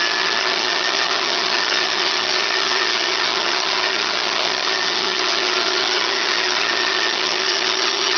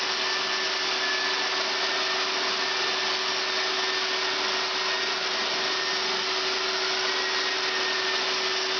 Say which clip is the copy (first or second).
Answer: first